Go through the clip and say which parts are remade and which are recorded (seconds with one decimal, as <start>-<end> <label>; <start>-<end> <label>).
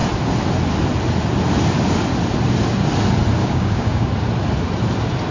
0.0-3.4 recorded; 3.4-4.1 remade; 4.1-5.3 recorded